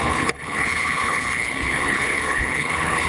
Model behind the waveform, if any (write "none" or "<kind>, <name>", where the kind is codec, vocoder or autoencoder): codec, HILCodec